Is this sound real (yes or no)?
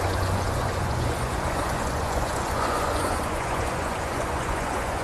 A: no